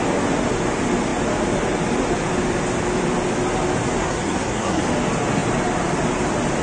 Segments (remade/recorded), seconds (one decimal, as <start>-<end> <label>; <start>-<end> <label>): 0.0-4.0 recorded; 4.0-4.8 remade; 4.8-6.6 recorded